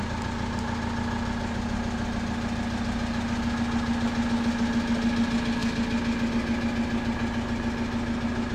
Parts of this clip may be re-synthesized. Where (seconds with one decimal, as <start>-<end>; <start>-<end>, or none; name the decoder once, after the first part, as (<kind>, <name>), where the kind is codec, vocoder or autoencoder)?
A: none